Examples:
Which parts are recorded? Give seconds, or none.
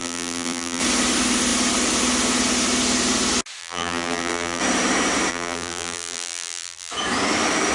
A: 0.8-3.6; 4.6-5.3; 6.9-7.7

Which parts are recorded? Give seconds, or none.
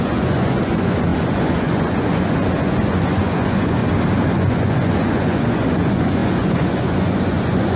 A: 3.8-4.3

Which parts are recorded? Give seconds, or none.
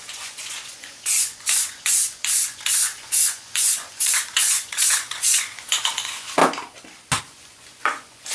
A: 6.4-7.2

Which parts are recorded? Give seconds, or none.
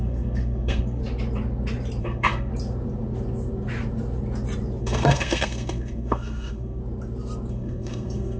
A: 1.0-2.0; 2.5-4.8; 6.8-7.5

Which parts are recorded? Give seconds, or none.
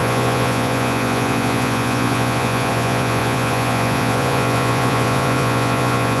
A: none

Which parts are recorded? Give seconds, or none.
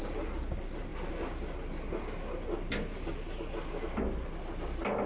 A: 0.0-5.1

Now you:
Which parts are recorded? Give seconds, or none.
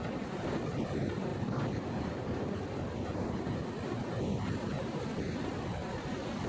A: 0.8-6.5